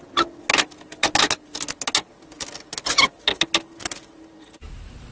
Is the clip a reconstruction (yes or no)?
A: no